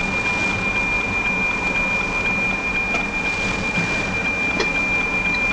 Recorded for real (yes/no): yes